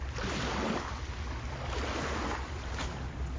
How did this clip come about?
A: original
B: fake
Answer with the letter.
A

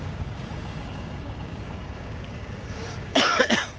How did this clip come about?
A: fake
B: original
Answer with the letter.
A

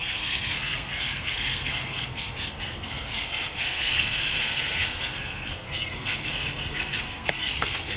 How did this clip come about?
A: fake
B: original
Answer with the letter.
A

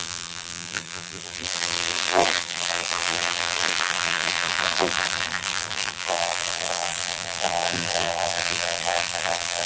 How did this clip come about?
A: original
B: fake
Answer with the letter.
B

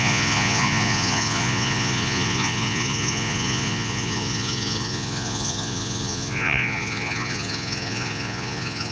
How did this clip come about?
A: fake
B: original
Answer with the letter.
A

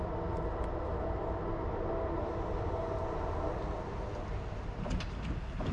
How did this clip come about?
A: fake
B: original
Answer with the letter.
B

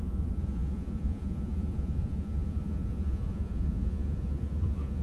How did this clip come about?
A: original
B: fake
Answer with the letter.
B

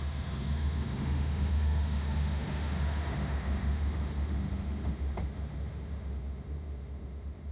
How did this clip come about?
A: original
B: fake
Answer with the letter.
B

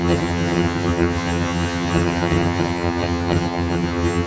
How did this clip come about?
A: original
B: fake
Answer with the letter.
B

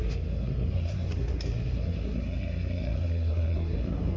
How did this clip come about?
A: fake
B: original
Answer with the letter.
A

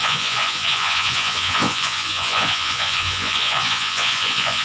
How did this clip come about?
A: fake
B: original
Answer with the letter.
A